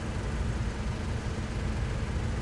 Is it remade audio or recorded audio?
recorded